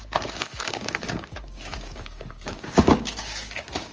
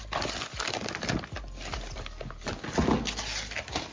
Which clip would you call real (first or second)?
second